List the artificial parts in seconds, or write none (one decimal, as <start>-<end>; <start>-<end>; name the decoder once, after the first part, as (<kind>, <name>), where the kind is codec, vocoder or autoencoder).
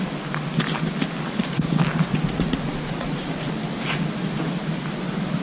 2.1-3.5 (vocoder, Vocos)